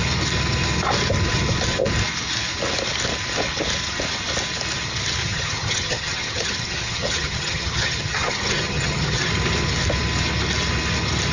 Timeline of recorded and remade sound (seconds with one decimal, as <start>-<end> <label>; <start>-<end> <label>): 0.0-5.2 recorded; 5.2-9.3 remade; 9.3-11.3 recorded